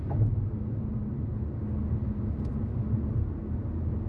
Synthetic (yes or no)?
no